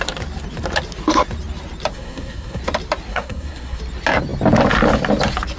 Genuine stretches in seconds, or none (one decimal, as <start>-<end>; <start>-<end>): 0.0-1.9; 2.6-3.1; 3.8-5.6